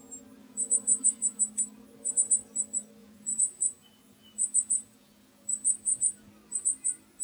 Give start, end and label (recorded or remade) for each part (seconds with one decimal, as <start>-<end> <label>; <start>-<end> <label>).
0.0-0.4 recorded; 0.4-1.4 remade; 1.4-3.0 recorded; 3.0-6.3 remade; 6.3-7.2 recorded